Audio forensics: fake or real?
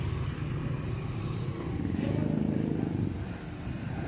real